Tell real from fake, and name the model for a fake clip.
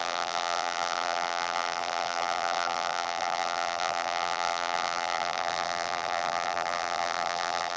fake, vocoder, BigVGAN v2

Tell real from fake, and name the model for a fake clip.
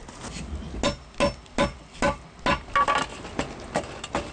real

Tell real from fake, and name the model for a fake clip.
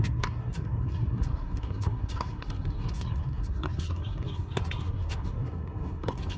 fake, codec, SNAC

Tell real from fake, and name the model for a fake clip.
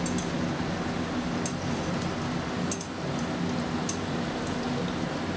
real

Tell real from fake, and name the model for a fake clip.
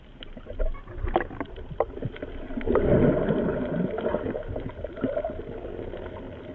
real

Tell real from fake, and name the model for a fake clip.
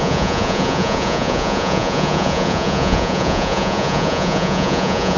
fake, vocoder, Vocos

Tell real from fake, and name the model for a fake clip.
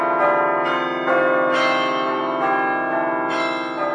real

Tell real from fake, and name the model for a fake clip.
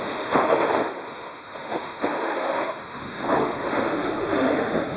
fake, autoencoder, DAC-VAE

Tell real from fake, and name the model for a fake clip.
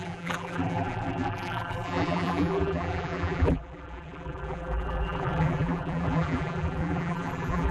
fake, vocoder, BigVGAN v2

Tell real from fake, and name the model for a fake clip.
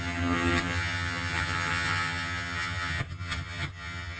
fake, vocoder, HiFi-GAN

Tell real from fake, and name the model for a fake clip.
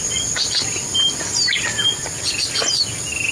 real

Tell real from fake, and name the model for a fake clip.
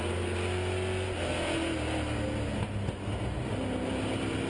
real